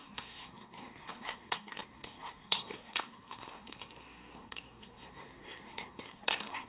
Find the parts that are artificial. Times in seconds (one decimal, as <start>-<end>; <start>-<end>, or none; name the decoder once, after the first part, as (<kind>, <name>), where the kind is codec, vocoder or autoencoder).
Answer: 0.0-6.7 (codec, SNAC)